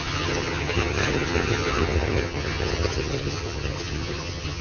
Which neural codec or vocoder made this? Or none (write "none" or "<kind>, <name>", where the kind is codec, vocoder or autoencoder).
vocoder, HiFi-GAN